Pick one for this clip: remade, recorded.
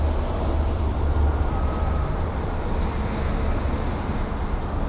recorded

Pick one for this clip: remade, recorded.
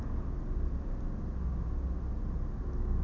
recorded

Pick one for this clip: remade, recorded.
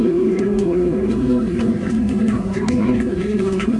remade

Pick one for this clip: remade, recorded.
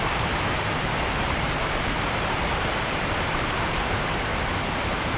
remade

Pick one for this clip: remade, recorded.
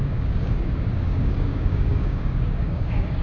remade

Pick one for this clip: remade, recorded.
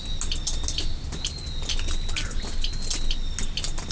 recorded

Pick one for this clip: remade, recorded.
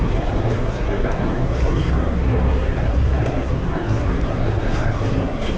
remade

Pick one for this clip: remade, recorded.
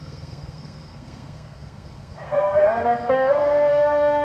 remade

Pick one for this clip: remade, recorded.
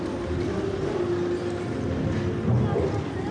recorded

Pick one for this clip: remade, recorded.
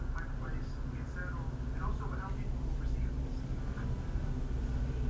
recorded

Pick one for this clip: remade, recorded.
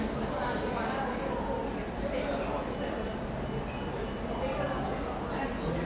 recorded